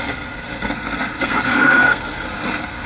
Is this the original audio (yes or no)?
no